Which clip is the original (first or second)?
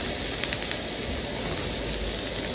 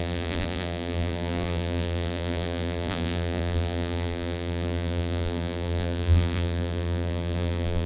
first